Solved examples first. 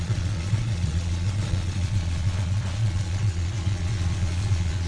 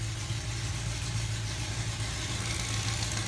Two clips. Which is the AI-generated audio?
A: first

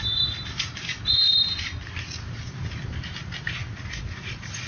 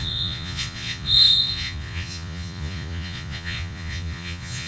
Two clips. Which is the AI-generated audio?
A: second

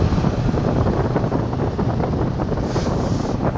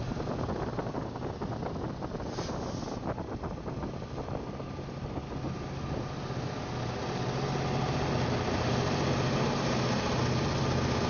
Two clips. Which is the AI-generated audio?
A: first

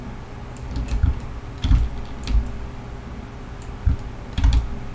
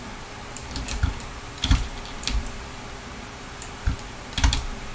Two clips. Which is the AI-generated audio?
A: second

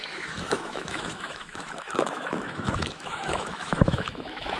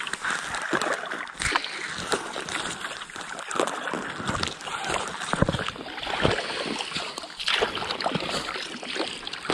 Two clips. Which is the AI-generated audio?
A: first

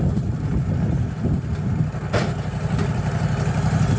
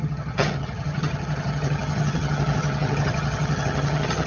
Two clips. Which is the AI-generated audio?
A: second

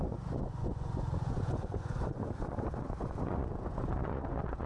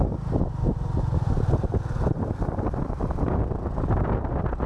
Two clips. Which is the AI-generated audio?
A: first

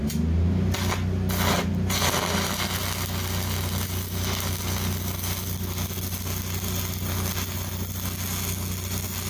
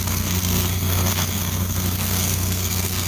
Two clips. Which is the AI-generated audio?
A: second